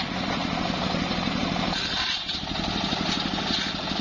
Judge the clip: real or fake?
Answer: fake